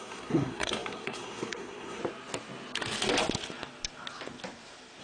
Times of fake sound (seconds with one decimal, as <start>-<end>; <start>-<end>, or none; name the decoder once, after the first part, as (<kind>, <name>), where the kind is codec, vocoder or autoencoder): 0.0-2.0 (codec, SNAC)